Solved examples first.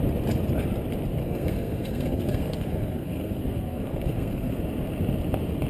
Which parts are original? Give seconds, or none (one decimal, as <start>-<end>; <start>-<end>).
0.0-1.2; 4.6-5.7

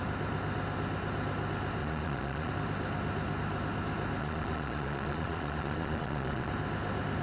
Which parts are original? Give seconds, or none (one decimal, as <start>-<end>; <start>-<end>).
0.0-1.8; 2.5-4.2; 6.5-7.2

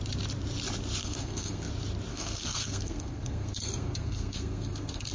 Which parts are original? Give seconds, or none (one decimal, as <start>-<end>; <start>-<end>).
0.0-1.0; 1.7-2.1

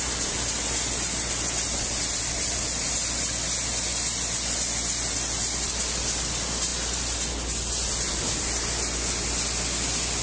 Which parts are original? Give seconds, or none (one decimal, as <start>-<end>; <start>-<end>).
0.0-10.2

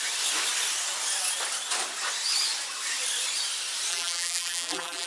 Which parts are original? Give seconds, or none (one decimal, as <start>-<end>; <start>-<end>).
0.0-3.9

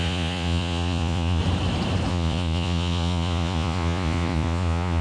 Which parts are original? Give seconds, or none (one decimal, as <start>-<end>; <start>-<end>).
1.4-2.1

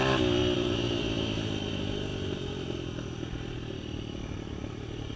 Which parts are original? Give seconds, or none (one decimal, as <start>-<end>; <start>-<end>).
0.0-0.4; 1.7-5.2